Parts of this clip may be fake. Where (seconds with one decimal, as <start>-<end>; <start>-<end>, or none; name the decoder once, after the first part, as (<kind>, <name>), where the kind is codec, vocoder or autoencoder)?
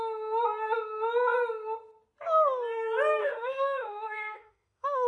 3.2-5.1 (autoencoder, DAC-VAE)